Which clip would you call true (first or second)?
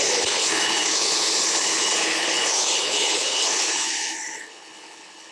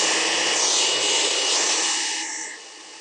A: second